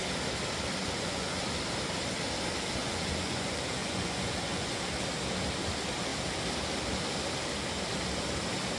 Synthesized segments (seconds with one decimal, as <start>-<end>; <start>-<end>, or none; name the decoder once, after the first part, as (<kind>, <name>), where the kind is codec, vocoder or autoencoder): 0.8-1.4 (vocoder, Vocos); 2.8-4.8